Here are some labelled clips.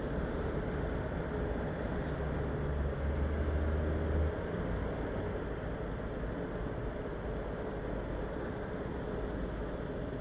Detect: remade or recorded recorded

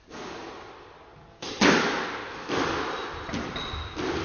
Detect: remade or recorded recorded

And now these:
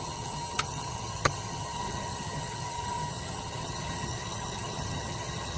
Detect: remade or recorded remade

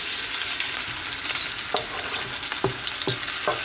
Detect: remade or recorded recorded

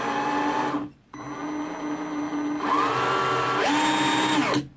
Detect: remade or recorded recorded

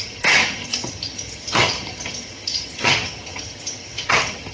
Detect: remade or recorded remade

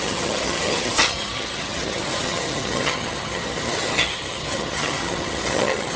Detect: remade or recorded remade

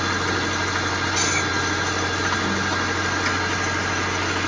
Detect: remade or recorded recorded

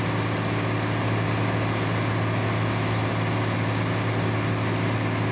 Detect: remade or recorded recorded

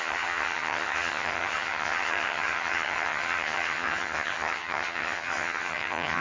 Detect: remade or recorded remade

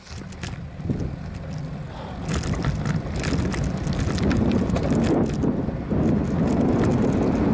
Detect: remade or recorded recorded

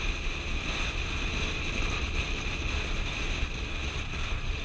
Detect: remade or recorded recorded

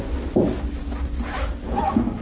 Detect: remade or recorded recorded